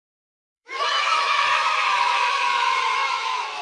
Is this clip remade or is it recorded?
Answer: remade